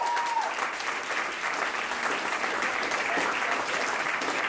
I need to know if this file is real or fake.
real